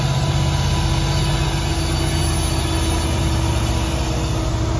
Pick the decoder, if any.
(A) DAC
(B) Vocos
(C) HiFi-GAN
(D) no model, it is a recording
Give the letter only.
D